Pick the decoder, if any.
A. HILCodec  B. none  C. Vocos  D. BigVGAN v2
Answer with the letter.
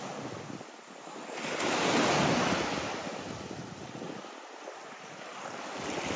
B